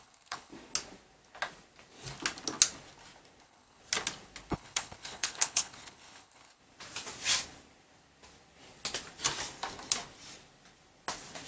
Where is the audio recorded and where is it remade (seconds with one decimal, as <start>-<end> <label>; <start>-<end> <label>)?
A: 0.0-0.5 remade; 0.5-3.4 recorded; 3.4-3.8 remade; 3.8-4.5 recorded; 4.5-6.6 remade; 6.6-11.5 recorded